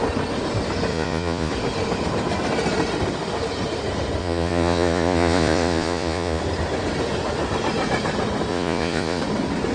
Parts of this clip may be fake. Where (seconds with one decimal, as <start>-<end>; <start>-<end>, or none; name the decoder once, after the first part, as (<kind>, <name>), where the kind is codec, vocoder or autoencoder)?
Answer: 0.9-1.5 (vocoder, Vocos); 4.2-6.4; 8.5-9.2